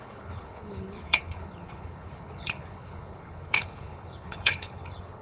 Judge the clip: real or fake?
fake